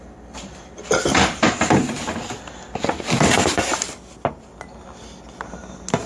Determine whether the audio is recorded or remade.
recorded